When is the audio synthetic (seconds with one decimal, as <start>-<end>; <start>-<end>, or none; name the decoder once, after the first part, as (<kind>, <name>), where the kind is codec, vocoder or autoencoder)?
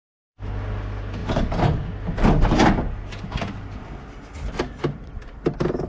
none